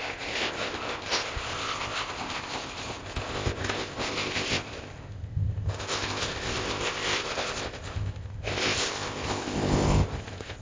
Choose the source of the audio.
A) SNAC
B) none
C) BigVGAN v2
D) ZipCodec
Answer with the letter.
D